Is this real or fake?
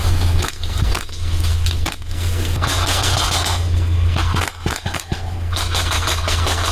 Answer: fake